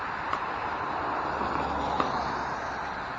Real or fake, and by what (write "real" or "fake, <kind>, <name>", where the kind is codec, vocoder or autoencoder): real